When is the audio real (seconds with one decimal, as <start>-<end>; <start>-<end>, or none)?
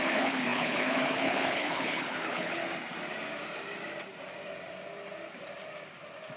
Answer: 2.6-6.4